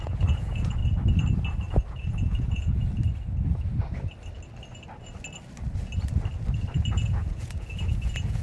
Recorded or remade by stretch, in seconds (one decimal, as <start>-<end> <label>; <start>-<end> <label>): 0.0-0.8 remade; 0.8-1.9 recorded; 1.9-2.8 remade; 2.8-6.9 recorded; 6.9-8.4 remade